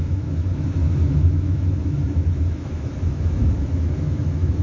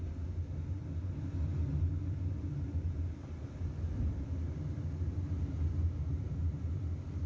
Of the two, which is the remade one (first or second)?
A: first